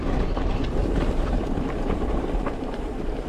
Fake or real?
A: fake